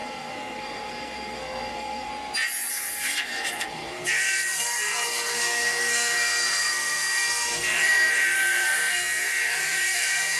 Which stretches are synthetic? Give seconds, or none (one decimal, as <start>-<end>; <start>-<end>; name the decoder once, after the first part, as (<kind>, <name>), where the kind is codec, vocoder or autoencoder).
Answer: 0.0-2.1 (codec, SNAC); 2.7-10.4